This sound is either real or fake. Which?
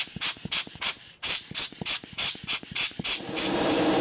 fake